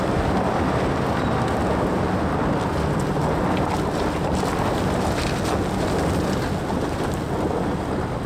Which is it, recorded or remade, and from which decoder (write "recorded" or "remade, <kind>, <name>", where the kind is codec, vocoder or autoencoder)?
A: recorded